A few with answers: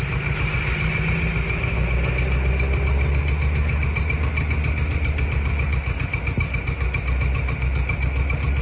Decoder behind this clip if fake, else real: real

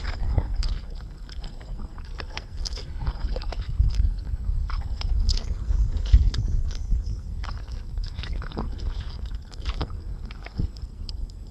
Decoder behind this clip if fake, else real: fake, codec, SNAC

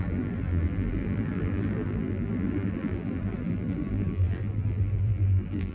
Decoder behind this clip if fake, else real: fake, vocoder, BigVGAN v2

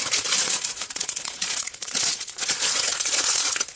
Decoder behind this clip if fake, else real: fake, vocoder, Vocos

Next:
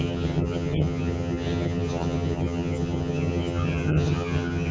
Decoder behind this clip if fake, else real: fake, vocoder, HiFi-GAN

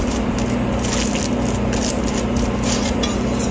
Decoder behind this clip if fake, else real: real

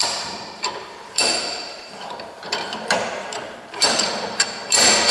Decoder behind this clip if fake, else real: fake, vocoder, BigVGAN v2